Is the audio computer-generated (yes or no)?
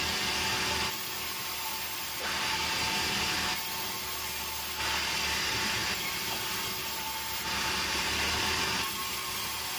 no